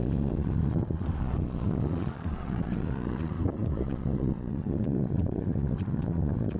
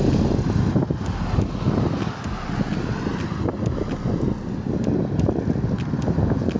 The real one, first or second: second